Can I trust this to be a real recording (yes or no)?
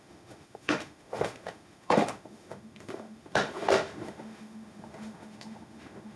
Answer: no